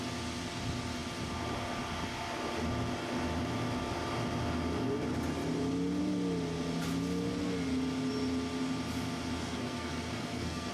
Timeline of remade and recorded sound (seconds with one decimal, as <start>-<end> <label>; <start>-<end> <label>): 0.0-9.4 recorded; 9.4-10.7 remade